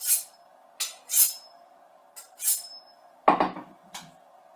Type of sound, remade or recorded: recorded